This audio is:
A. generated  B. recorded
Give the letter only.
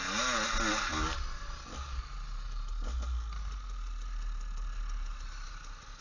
B